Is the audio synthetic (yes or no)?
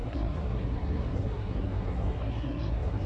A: yes